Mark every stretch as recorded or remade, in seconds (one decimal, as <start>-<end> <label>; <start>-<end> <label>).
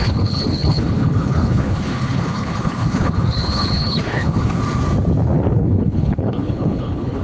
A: 0.0-4.6 remade; 4.6-5.6 recorded; 5.6-7.2 remade